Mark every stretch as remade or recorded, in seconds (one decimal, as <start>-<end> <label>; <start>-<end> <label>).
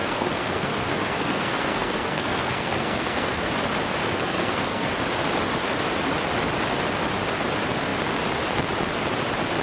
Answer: 0.0-3.5 remade; 3.5-4.0 recorded; 4.0-4.9 remade; 4.9-9.6 recorded